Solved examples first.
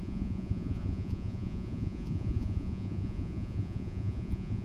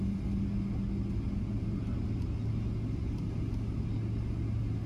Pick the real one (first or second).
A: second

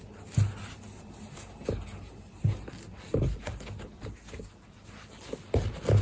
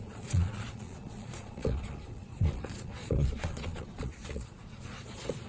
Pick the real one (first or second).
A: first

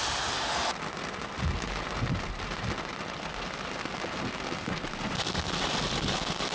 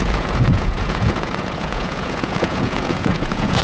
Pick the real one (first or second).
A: first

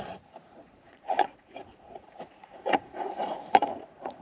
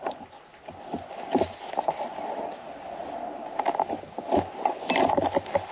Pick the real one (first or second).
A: second